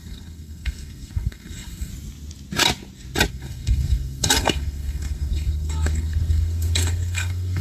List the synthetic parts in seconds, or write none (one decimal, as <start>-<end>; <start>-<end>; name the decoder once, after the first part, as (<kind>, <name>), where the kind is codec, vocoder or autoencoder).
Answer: 0.0-1.9 (codec, SNAC); 3.3-7.6